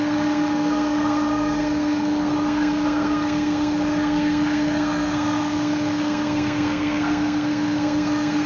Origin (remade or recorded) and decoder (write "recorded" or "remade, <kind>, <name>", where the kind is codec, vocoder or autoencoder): remade, codec, SNAC